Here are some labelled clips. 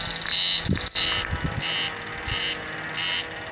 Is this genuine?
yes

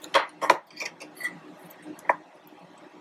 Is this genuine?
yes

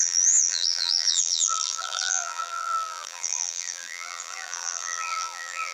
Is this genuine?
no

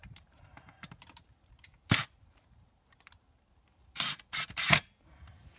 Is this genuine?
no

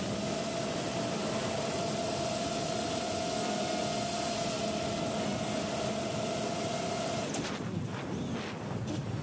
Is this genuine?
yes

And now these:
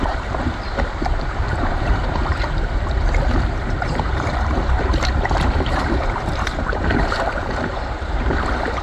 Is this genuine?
no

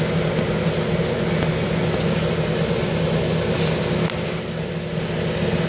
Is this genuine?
yes